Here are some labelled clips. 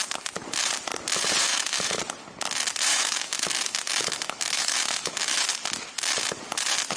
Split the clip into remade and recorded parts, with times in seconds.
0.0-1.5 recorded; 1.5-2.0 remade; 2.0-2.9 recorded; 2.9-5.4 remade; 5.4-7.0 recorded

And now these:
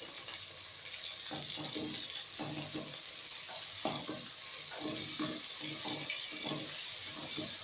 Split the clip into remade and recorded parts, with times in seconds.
0.0-7.6 recorded

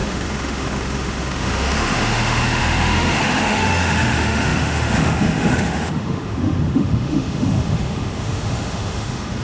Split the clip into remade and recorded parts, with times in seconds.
0.0-9.4 remade

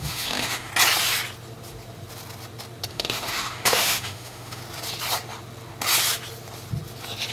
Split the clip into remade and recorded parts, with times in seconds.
0.0-0.7 remade; 0.7-2.9 recorded; 2.9-4.6 remade; 4.6-7.3 recorded

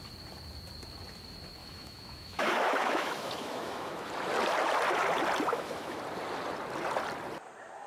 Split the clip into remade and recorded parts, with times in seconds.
0.0-1.6 recorded; 1.6-4.1 remade; 4.1-5.5 recorded; 5.5-6.0 remade; 6.0-7.9 recorded

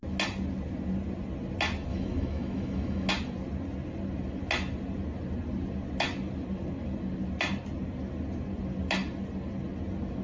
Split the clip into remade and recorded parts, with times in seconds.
0.0-1.9 recorded; 1.9-3.1 remade; 3.1-10.2 recorded